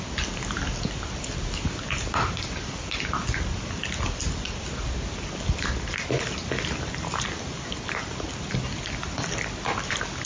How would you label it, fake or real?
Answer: real